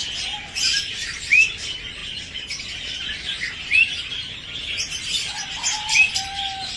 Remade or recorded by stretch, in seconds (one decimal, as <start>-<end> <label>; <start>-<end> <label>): 0.0-1.1 remade; 1.1-6.8 recorded